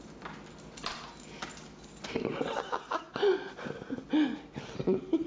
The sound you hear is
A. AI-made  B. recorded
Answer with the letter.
B